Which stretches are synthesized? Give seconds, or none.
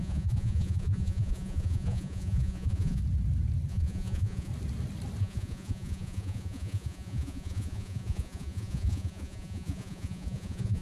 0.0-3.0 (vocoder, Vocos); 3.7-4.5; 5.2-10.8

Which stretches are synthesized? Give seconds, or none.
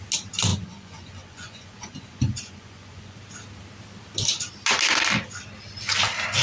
0.5-3.2 (vocoder, Vocos)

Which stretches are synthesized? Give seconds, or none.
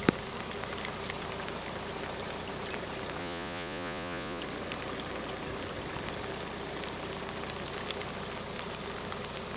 3.2-4.4 (vocoder, Vocos)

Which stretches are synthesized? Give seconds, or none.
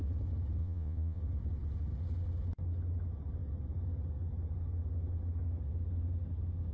0.6-1.2 (vocoder, Vocos)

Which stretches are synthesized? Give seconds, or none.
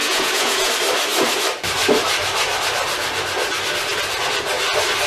0.0-0.7 (vocoder, Vocos)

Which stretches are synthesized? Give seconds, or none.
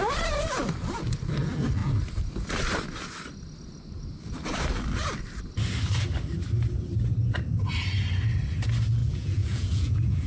9.0-10.3 (vocoder, Vocos)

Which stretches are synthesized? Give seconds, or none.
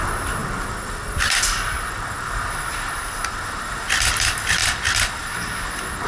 none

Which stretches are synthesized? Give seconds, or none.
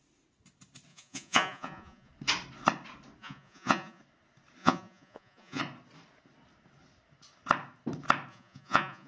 0.9-2.1 (vocoder, Vocos); 3.2-4.0; 4.6-5.6; 8.3-9.1